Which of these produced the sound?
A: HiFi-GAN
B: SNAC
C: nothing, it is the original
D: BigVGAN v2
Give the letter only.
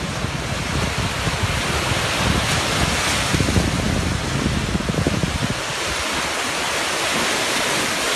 C